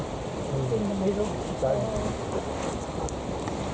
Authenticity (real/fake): real